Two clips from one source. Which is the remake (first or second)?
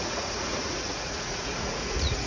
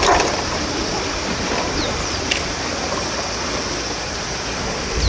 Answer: first